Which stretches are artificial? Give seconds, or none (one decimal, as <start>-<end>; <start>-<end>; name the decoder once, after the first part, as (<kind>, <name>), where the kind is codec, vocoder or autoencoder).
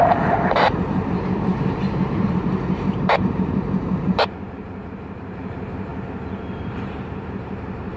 0.0-5.9 (vocoder, BigVGAN v2); 6.5-8.0